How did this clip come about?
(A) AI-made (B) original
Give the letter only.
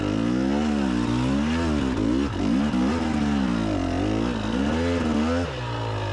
B